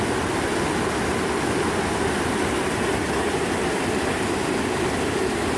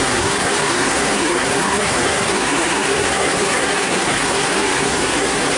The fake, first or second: second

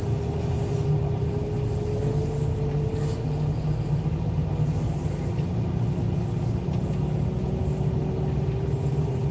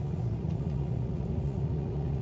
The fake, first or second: second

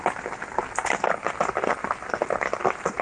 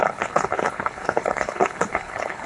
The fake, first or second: second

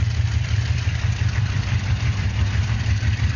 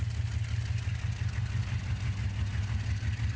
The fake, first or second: first